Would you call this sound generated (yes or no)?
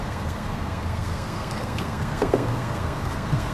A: yes